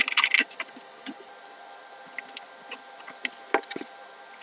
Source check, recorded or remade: recorded